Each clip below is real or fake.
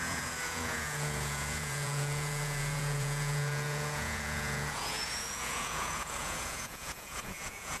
fake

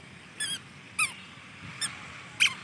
real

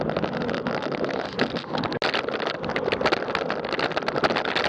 real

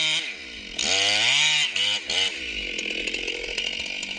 real